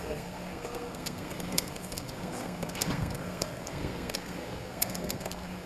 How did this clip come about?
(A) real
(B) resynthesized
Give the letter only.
B